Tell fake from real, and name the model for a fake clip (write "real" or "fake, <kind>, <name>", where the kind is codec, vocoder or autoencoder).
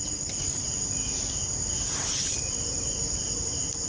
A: real